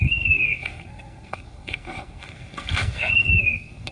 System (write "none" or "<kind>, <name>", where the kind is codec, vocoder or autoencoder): codec, SNAC